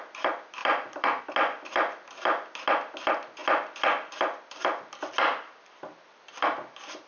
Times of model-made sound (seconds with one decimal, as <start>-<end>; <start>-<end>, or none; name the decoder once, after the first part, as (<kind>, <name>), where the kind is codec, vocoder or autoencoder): 0.6-1.2 (vocoder, BigVGAN v2); 3.4-3.9